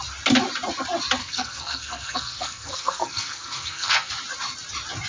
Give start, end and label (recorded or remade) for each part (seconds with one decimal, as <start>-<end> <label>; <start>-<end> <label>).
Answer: 0.0-1.2 recorded; 1.2-4.1 remade; 4.1-5.1 recorded